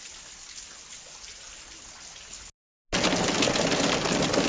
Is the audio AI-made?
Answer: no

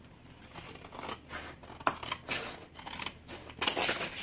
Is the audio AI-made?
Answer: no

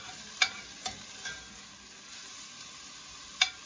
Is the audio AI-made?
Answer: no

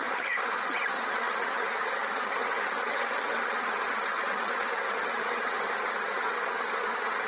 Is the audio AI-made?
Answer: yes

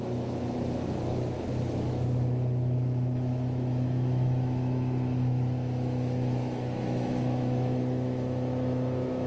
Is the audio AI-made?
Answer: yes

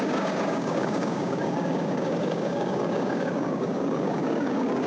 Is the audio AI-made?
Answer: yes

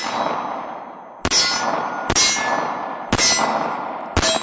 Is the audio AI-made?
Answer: no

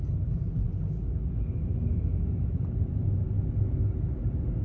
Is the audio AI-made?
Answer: no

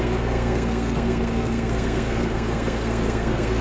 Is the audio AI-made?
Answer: yes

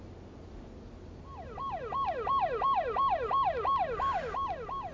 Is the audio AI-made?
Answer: no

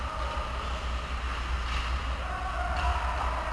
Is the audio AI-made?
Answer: no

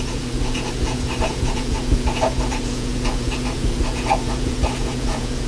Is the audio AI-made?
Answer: yes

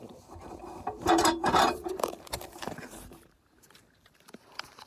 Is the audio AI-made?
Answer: yes